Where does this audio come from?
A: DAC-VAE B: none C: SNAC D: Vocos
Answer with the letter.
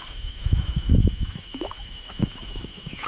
A